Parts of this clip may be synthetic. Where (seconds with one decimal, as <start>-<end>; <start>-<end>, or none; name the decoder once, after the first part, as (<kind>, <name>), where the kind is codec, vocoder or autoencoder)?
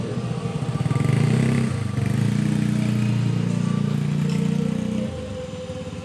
0.5-2.2 (vocoder, BigVGAN v2)